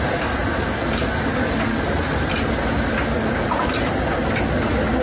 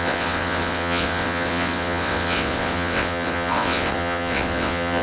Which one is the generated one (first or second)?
second